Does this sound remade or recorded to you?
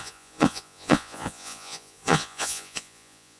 remade